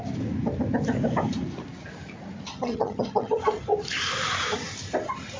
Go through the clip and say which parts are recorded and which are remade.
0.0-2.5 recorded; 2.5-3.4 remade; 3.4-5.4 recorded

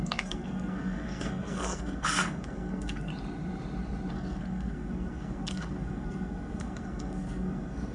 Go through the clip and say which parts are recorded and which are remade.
0.0-3.1 remade; 3.1-4.1 recorded; 4.1-7.9 remade

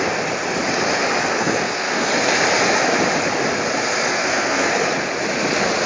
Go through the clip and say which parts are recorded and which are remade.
0.0-1.4 recorded; 1.4-2.1 remade; 2.1-4.1 recorded; 4.1-4.7 remade; 4.7-5.9 recorded

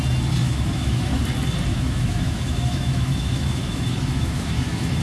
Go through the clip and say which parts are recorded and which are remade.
0.0-0.4 recorded; 0.4-1.2 remade; 1.2-1.7 recorded; 1.7-5.0 remade

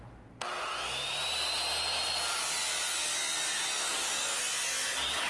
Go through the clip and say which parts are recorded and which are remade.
0.0-5.3 recorded

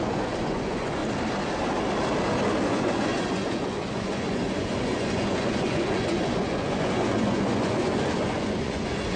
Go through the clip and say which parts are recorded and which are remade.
0.0-1.0 remade; 1.0-2.7 recorded; 2.7-9.2 remade

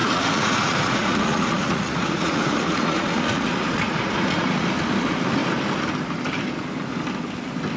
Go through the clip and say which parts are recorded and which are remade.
0.0-4.7 remade; 4.7-7.8 recorded